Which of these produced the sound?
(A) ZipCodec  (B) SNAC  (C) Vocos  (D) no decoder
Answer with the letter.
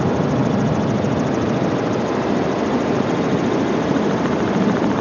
D